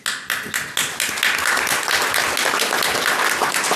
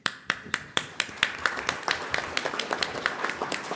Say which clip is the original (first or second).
first